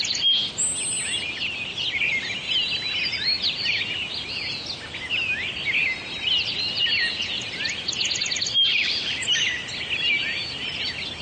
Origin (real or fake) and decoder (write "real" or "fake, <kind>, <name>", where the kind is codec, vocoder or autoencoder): real